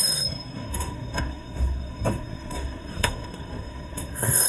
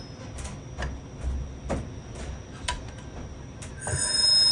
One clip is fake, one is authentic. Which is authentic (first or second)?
second